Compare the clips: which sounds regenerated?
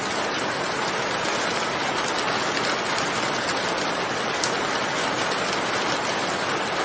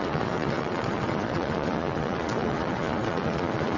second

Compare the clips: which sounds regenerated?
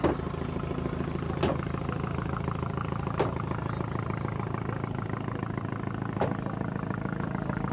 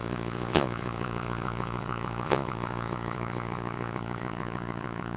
second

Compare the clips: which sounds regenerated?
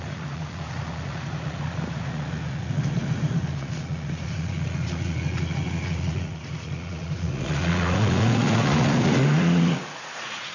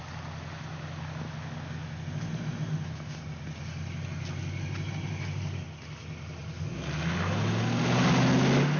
first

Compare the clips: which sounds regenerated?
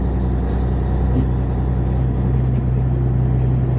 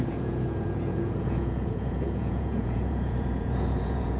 second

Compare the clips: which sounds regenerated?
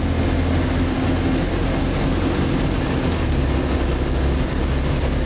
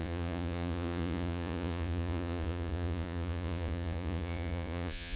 second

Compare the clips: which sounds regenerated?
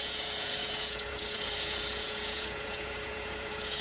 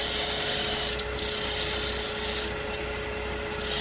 first